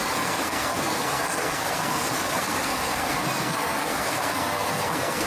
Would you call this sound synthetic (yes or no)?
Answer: yes